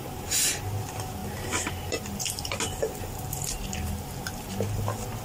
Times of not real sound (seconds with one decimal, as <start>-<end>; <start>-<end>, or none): 1.2-4.3